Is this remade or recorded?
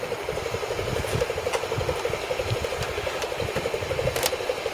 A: recorded